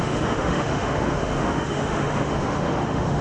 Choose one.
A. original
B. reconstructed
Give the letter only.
B